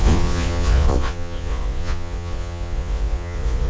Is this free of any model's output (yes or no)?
no